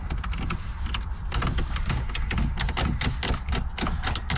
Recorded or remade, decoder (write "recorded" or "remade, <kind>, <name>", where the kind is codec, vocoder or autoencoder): recorded